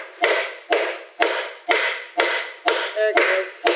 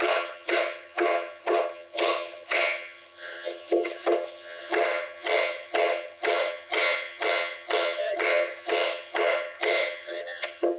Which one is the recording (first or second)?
first